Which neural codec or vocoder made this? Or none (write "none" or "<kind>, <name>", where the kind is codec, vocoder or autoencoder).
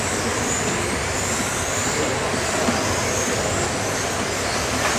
none